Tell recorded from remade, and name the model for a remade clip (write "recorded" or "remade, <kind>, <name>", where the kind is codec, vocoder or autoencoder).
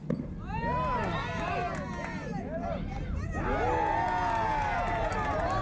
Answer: recorded